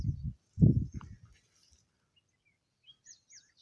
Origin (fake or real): real